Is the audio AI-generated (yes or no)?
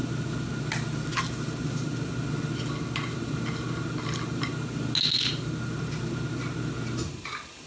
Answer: no